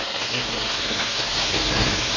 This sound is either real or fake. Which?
fake